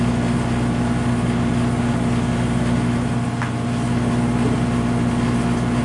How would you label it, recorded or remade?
recorded